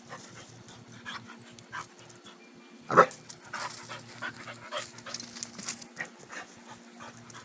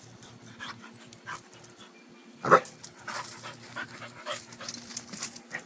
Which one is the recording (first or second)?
first